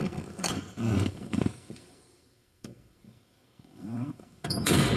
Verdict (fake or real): fake